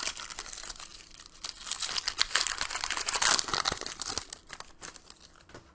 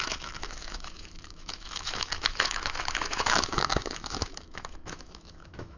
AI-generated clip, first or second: second